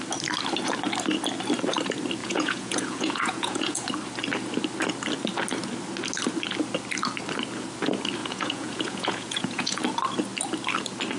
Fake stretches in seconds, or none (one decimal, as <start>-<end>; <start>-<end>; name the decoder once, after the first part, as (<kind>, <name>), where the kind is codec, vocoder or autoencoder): 2.2-3.9 (vocoder, Vocos); 8.2-9.8